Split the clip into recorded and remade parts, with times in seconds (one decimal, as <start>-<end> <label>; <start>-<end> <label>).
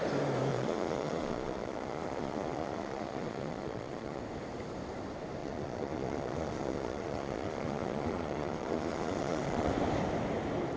0.0-0.5 recorded; 0.5-4.2 remade; 4.2-5.4 recorded; 5.4-9.7 remade; 9.7-10.8 recorded